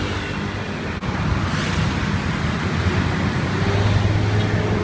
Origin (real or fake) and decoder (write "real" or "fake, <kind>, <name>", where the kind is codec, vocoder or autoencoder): real